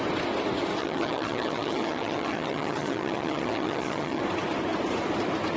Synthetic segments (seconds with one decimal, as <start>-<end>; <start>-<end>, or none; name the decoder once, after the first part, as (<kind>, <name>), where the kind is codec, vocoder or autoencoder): 0.8-4.2 (vocoder, HiFi-GAN)